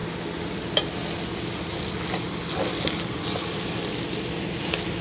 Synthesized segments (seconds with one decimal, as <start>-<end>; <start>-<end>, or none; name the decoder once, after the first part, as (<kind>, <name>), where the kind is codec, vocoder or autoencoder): none